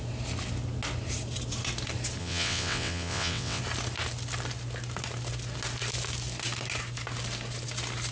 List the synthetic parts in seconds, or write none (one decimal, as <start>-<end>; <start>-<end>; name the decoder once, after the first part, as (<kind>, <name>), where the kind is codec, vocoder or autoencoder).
2.2-3.6 (vocoder, WaveNeXt)

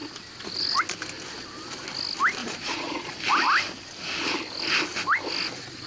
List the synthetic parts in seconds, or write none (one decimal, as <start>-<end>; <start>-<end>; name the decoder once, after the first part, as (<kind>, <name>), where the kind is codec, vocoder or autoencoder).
2.4-3.2 (vocoder, Vocos)

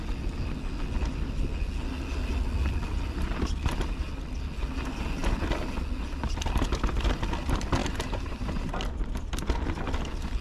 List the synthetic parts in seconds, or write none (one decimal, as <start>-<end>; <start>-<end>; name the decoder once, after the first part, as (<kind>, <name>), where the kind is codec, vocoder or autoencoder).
7.8-8.5 (vocoder, BigVGAN v2)

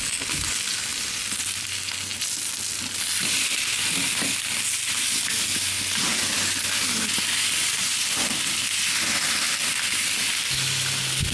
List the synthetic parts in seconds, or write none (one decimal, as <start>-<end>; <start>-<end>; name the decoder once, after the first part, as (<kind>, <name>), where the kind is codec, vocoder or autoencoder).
none